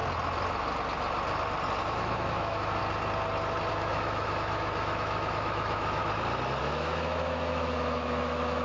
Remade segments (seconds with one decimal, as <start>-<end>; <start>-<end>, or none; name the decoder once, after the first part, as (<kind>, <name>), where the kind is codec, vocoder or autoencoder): 1.8-2.8 (autoencoder, DAC-VAE); 3.7-6.0; 6.6-8.6